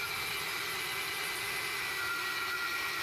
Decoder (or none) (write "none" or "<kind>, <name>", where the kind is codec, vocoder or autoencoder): none